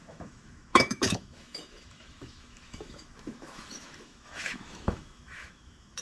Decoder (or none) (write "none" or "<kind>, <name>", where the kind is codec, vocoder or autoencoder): autoencoder, DAC-VAE